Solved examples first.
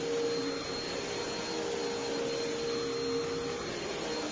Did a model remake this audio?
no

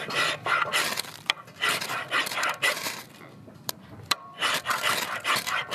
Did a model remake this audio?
yes